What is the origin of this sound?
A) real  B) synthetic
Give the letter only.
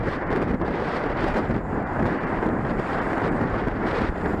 B